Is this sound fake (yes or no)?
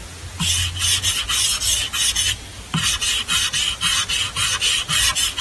no